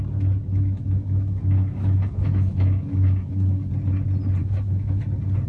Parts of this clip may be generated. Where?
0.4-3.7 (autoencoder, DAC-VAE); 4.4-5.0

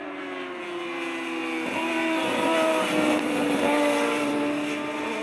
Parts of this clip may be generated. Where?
1.4-4.3 (vocoder, BigVGAN v2)

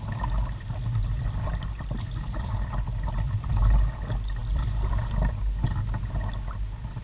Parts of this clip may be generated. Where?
1.0-3.6 (vocoder, BigVGAN v2); 4.4-4.9

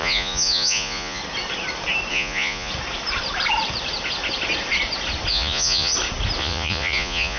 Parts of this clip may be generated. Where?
0.0-1.2 (vocoder, Vocos); 2.1-2.7; 5.3-5.9; 6.4-7.4

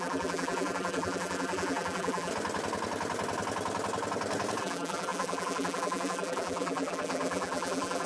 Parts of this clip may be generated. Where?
0.0-2.3 (vocoder, BigVGAN v2); 4.6-8.1

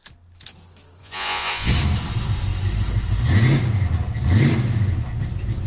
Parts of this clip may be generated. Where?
1.0-1.7 (vocoder, Vocos)